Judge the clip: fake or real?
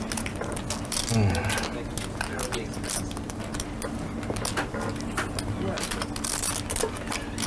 real